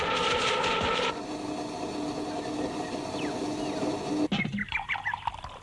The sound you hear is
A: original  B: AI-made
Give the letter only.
A